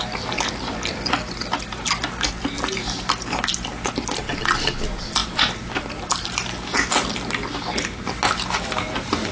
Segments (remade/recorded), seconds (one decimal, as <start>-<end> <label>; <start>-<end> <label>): 0.0-9.3 recorded